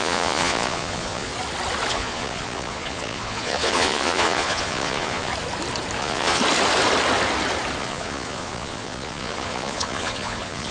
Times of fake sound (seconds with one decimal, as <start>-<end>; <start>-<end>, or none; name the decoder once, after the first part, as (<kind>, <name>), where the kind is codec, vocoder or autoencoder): 0.0-1.3 (vocoder, Vocos); 1.9-5.3; 6.0-6.4; 7.8-10.7